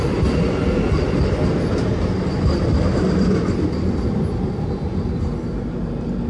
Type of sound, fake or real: real